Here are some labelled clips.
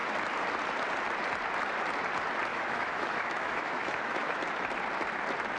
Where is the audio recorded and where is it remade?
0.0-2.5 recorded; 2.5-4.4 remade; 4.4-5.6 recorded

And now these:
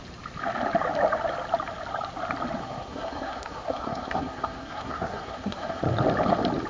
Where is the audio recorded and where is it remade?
0.0-2.6 recorded; 2.6-5.8 remade; 5.8-6.7 recorded

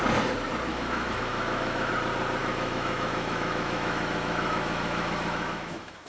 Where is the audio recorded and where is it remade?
0.0-0.7 recorded; 0.7-1.9 remade; 1.9-2.4 recorded; 2.4-6.1 remade